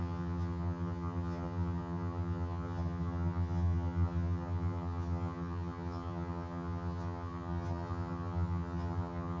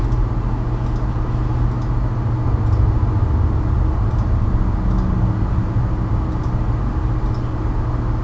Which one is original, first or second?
second